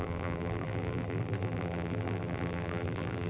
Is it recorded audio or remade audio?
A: remade